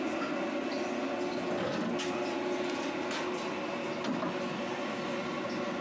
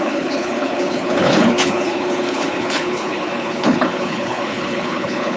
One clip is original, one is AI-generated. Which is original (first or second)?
first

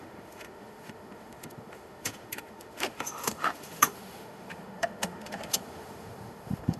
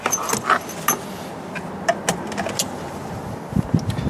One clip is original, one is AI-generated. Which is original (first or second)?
second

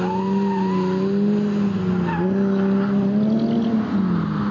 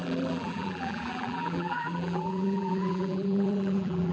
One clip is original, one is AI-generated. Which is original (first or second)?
first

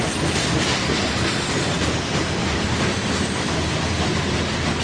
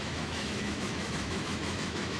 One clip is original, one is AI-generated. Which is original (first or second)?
first